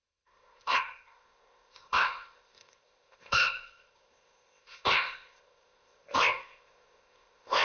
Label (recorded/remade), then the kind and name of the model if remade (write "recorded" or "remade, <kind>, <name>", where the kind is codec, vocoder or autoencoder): remade, codec, ZipCodec